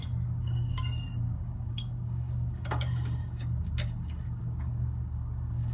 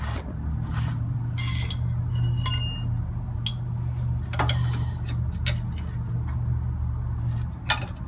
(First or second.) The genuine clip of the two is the second